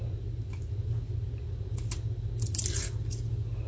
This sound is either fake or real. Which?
real